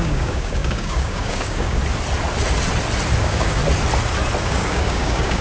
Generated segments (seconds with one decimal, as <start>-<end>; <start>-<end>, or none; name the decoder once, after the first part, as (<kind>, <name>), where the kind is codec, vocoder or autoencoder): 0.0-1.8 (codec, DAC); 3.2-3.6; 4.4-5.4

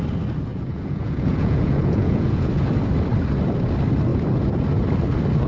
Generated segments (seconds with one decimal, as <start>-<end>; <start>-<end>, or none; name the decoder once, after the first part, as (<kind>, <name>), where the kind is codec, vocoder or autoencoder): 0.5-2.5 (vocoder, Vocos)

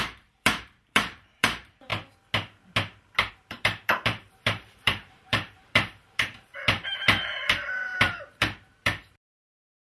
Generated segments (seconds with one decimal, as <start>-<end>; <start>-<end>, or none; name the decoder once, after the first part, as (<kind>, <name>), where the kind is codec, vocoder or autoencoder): 0.0-1.9 (vocoder, BigVGAN v2); 3.3-9.8

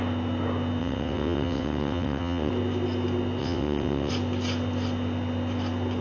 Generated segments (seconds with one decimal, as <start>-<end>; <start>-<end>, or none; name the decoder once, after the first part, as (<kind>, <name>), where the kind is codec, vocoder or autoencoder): 0.8-2.5 (vocoder, WaveNeXt); 3.4-4.1

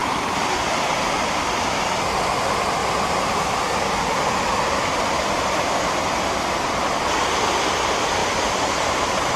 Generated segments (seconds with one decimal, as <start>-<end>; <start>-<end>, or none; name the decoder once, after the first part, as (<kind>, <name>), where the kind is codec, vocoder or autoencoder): 0.0-0.5 (vocoder, BigVGAN v2); 2.8-6.2; 8.2-8.7